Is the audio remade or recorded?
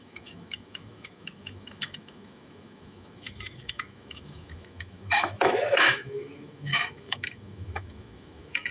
remade